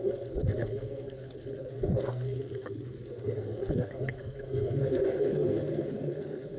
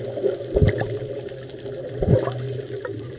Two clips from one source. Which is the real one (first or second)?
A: second